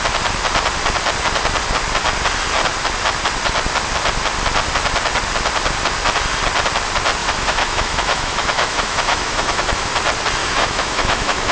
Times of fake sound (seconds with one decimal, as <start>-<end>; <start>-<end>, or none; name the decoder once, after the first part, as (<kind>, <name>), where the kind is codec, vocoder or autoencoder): 7.2-9.9 (autoencoder, DAC-VAE); 10.4-11.5